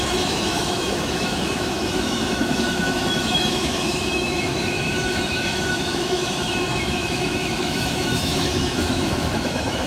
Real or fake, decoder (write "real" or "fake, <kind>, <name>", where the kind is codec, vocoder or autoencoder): fake, autoencoder, DAC-VAE